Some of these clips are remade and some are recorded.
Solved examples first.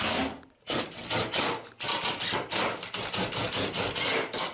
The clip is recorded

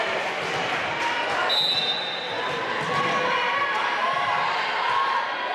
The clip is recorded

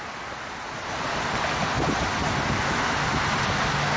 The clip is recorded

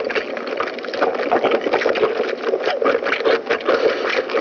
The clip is recorded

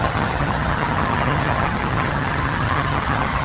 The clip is remade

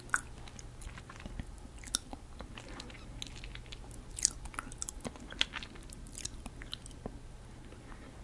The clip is recorded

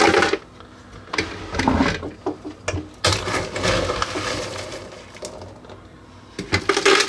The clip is recorded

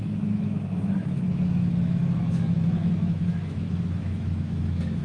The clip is remade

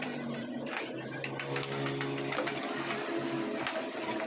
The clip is recorded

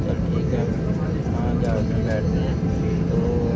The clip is recorded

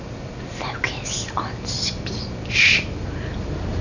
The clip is recorded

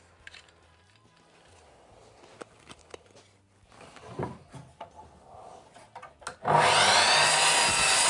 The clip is recorded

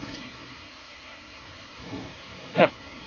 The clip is remade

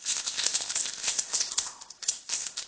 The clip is remade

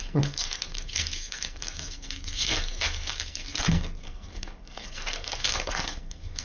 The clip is remade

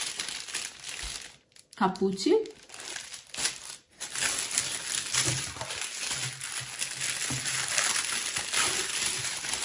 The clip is recorded